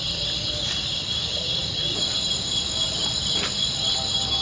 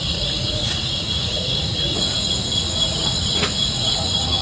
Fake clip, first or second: second